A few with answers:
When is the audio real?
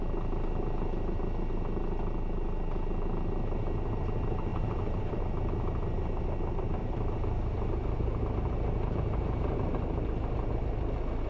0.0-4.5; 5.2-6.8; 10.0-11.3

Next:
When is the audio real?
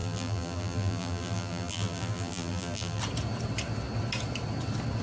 3.0-5.0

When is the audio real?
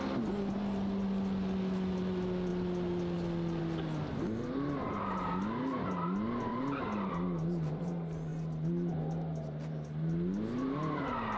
0.0-6.5; 7.1-11.4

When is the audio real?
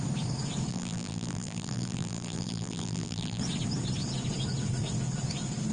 0.0-0.7; 3.4-5.7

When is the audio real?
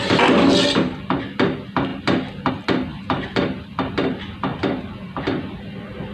0.0-2.9; 3.9-6.1